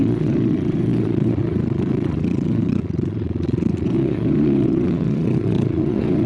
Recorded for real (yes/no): no